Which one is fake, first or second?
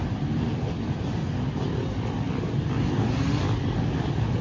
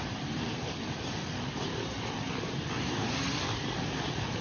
second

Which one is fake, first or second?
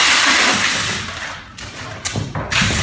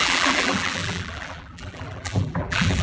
second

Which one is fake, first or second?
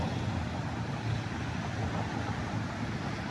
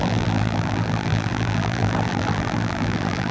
second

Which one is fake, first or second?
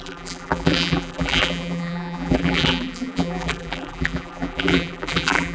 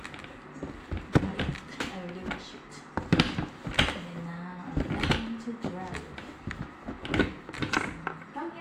first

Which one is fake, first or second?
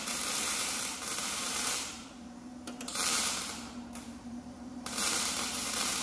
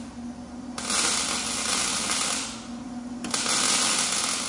first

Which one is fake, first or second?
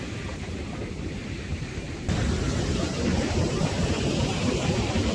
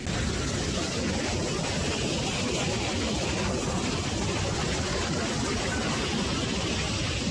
first